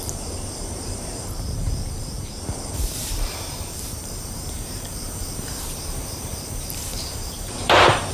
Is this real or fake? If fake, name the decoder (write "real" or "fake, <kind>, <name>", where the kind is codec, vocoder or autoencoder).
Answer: fake, vocoder, BigVGAN v2